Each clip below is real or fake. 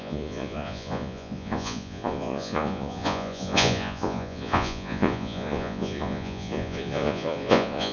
fake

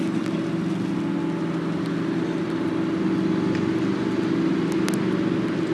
real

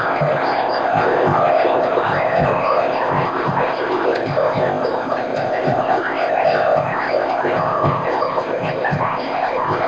fake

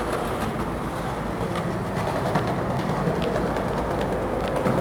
real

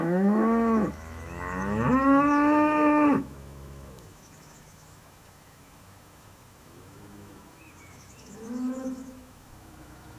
fake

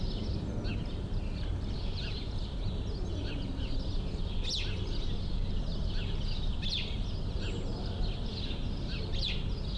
real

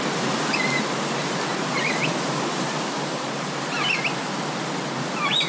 real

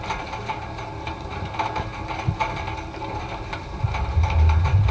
real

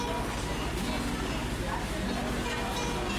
real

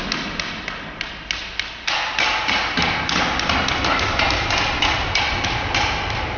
real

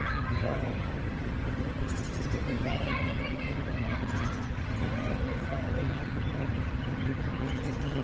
fake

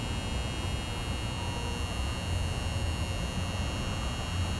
real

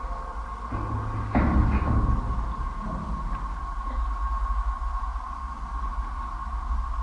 real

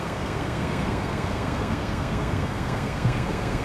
fake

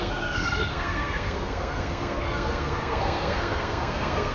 fake